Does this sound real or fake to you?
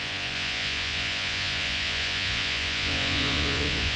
fake